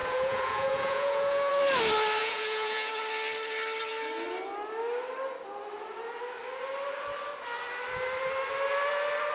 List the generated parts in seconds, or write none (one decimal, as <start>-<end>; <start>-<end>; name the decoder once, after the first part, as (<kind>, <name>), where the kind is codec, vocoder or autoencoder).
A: 0.0-1.5 (vocoder, Vocos); 2.2-2.9